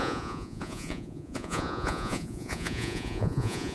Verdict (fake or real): fake